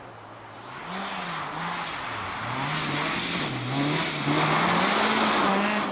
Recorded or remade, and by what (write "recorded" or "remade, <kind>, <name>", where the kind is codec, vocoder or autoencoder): recorded